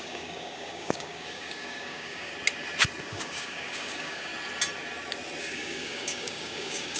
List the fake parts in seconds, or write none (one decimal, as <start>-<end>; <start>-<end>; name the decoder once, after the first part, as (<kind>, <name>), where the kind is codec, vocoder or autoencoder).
0.0-2.3 (codec, DAC); 3.0-4.3; 5.4-7.0